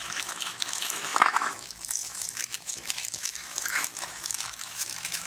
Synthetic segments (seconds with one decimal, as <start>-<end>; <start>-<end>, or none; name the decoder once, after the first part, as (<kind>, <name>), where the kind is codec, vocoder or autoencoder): 0.0-5.3 (autoencoder, DAC-VAE)